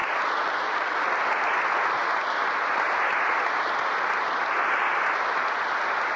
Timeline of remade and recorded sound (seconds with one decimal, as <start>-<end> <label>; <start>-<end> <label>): 0.0-1.2 remade; 1.2-2.0 recorded; 2.0-5.7 remade; 5.7-6.2 recorded